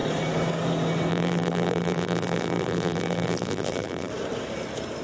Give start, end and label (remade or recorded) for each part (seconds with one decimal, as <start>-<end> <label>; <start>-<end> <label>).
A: 0.0-1.1 recorded; 1.1-4.1 remade; 4.1-5.0 recorded